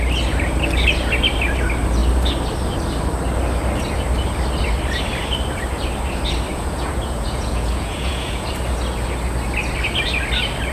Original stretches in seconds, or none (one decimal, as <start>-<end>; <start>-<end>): 0.0-6.5; 8.5-10.7